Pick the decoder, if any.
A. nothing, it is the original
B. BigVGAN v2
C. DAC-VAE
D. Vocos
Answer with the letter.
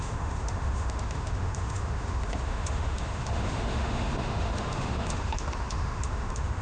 C